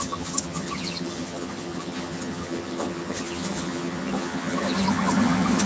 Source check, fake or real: fake